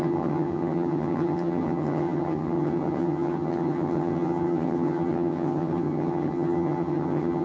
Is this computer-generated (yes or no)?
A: yes